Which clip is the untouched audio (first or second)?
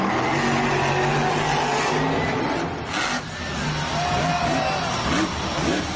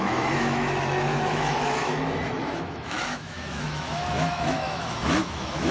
first